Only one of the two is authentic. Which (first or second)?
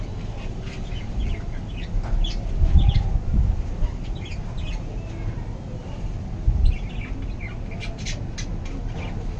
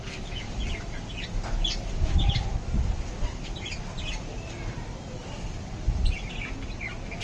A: first